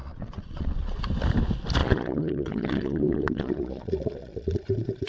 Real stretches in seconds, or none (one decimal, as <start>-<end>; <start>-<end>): 1.0-1.8